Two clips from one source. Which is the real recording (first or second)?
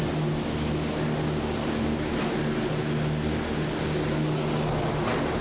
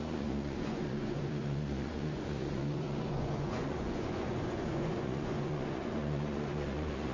first